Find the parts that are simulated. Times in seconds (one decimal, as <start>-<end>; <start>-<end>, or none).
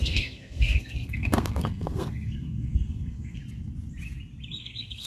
0.0-3.4; 4.5-5.1